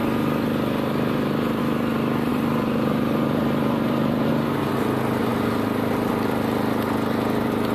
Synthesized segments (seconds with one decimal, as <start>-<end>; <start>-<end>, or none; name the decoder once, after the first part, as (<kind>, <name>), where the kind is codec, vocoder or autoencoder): 2.3-4.3 (vocoder, BigVGAN v2); 5.3-6.1